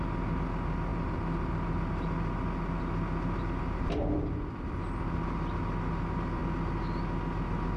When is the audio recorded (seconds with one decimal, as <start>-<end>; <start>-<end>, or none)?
0.0-7.8